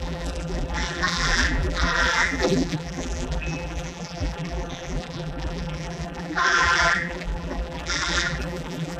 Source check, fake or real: fake